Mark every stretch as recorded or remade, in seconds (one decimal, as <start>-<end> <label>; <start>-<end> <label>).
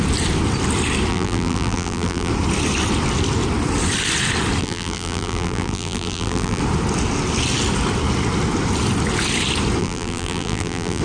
0.0-1.1 recorded; 1.1-2.3 remade; 2.3-4.6 recorded; 4.6-6.6 remade; 6.6-9.8 recorded; 9.8-11.0 remade